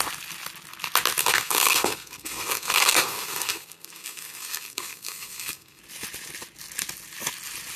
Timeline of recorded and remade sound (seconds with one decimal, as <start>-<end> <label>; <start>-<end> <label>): 0.0-1.2 recorded; 1.2-5.8 remade; 5.8-7.8 recorded